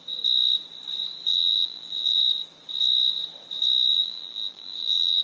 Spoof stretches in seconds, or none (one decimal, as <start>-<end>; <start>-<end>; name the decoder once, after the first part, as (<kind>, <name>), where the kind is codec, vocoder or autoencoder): 1.3-2.2 (vocoder, BigVGAN v2); 3.9-5.2

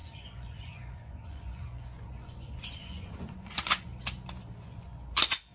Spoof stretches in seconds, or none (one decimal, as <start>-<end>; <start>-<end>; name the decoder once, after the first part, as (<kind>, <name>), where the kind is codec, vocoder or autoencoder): 0.0-3.9 (vocoder, Vocos); 4.4-5.5

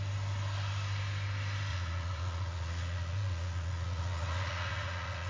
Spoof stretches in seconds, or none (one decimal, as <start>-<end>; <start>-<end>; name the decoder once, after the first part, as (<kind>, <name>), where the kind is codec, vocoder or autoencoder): 1.7-5.3 (vocoder, Vocos)

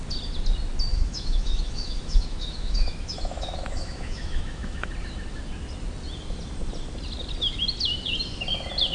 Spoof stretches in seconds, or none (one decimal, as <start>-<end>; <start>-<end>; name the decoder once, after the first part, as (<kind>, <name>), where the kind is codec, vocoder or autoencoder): 0.9-4.9 (autoencoder, DAC-VAE)

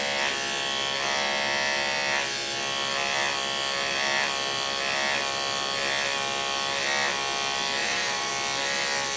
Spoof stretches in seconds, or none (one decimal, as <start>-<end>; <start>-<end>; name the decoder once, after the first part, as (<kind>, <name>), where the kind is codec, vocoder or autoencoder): 7.8-8.3 (vocoder, BigVGAN v2)